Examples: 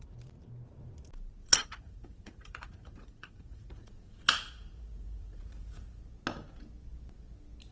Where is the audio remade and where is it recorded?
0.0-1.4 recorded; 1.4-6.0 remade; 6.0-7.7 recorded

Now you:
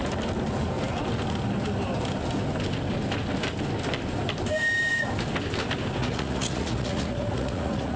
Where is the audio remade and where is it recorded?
0.0-6.0 recorded; 6.0-8.0 remade

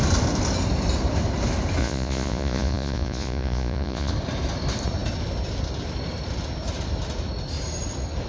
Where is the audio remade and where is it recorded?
0.0-1.8 recorded; 1.8-4.1 remade; 4.1-8.3 recorded